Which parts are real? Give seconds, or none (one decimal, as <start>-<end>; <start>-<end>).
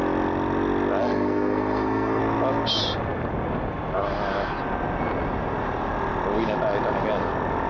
0.0-1.0; 2.2-7.7